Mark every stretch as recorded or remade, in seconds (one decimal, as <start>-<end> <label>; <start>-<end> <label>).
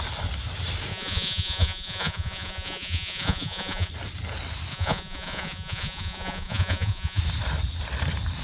0.0-0.9 recorded; 0.9-3.9 remade; 3.9-4.7 recorded; 4.7-7.2 remade; 7.2-8.4 recorded